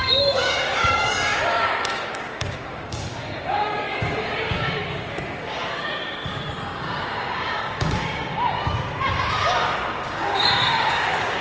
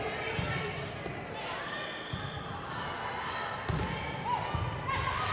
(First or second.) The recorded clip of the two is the second